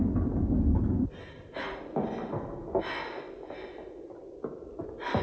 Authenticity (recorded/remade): recorded